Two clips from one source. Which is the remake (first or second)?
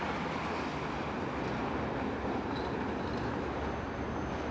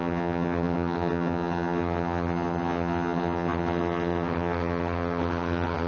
second